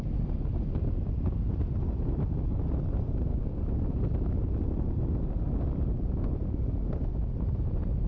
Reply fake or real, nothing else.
real